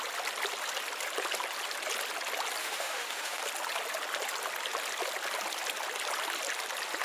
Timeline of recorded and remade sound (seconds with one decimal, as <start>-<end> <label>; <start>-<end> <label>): 0.0-2.6 recorded; 2.6-3.4 remade; 3.4-7.0 recorded